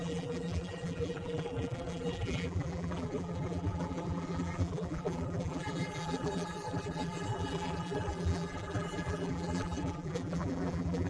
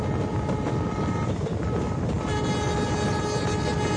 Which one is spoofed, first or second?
first